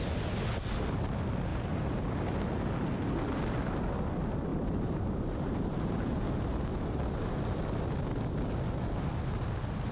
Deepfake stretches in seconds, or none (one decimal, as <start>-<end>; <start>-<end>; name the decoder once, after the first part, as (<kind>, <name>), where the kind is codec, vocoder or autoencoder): 1.5-2.0 (vocoder, BigVGAN v2); 4.5-6.1